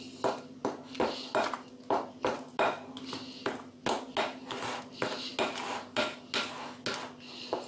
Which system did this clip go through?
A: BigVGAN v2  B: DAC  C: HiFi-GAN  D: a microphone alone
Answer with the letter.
D